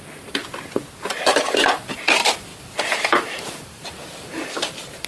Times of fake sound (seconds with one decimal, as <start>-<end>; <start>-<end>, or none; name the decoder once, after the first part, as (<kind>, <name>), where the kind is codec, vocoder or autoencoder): 0.0-0.4 (vocoder, BigVGAN v2); 1.2-5.1